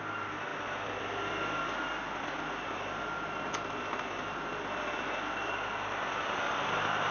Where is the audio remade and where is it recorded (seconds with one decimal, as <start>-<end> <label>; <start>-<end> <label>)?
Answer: 0.0-7.1 recorded